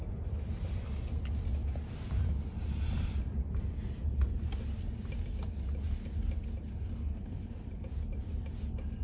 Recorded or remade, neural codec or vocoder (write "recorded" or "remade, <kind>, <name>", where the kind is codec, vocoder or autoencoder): recorded